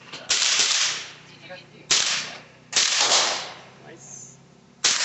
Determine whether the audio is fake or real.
fake